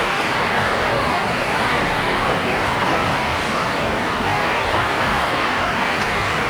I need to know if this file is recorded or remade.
remade